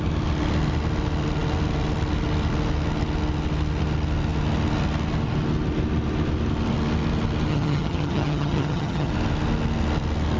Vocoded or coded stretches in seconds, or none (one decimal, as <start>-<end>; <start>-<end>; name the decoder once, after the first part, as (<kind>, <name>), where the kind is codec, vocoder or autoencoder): 7.5-9.1 (vocoder, HiFi-GAN)